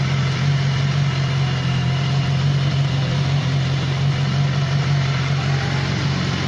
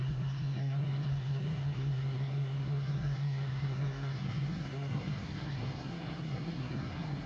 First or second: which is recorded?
first